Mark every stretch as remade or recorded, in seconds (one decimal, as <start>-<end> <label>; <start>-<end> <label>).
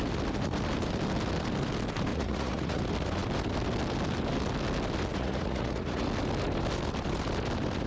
0.0-2.1 recorded; 2.1-2.8 remade; 2.8-5.1 recorded; 5.1-6.0 remade; 6.0-7.9 recorded